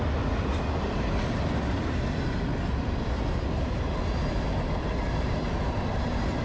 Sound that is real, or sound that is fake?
real